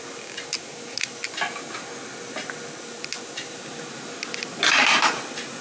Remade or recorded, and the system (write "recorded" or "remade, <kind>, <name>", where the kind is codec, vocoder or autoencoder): recorded